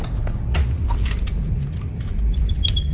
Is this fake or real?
real